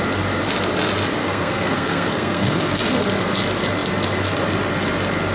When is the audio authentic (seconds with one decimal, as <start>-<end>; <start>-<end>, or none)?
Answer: 0.0-1.2; 2.8-5.3